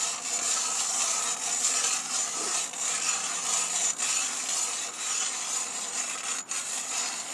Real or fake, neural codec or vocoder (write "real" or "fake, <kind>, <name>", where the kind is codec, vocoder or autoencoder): real